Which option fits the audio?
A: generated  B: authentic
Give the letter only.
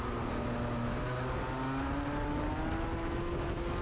B